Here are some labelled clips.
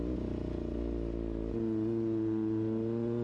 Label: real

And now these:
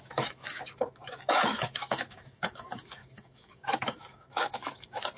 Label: fake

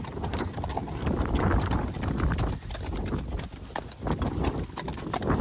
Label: real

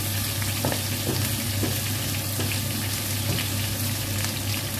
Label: real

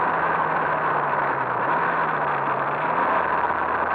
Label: real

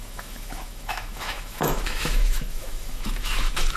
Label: fake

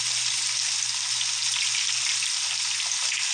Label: real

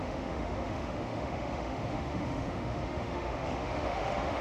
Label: fake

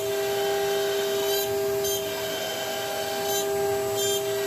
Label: real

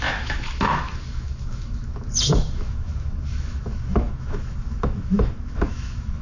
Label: fake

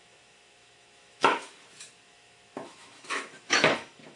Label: fake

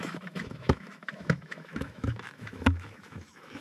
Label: fake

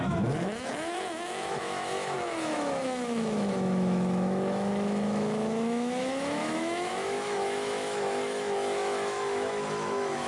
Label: fake